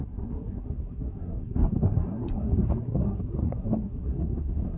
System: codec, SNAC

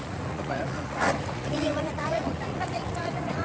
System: vocoder, Vocos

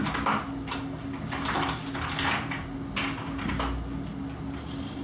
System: none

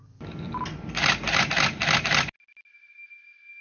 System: none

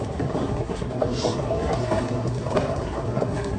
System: codec, SNAC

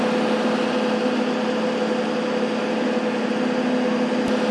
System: none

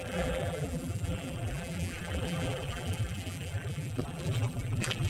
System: vocoder, BigVGAN v2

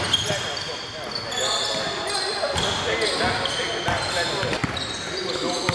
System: none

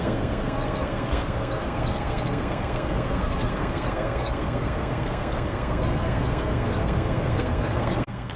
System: codec, SNAC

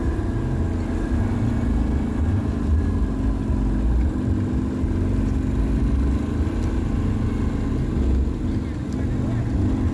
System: none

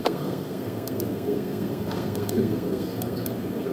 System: codec, SNAC